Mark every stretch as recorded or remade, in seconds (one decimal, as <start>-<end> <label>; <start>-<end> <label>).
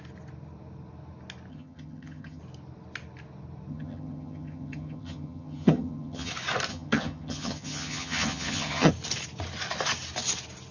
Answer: 0.0-1.5 recorded; 1.5-2.4 remade; 2.4-3.7 recorded; 3.7-6.3 remade; 6.3-6.7 recorded; 6.7-8.9 remade; 8.9-10.7 recorded